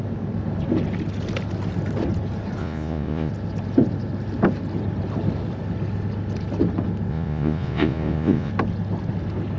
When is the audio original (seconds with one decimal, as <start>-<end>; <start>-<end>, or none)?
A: 0.0-2.6; 3.3-7.1; 8.5-9.6

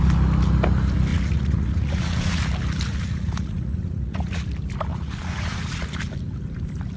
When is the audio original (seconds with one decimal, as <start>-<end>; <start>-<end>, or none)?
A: 0.0-1.1; 2.4-2.9; 4.4-4.9; 6.0-7.0

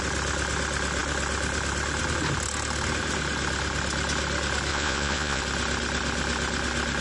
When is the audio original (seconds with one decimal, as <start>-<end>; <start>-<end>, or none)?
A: 0.0-4.7; 5.4-7.0

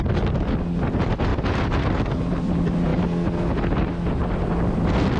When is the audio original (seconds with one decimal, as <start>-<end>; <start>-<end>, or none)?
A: 0.0-5.2

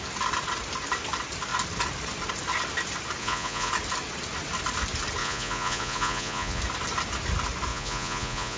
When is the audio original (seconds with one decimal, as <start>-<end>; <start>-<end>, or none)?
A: 0.0-3.2; 3.7-5.2; 6.6-7.7